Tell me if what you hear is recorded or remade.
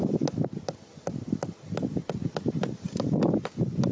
recorded